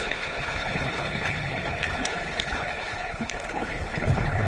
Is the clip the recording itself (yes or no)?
no